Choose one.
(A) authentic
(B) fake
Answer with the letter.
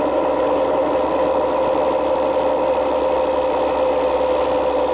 A